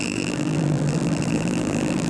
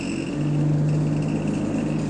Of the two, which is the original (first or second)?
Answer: second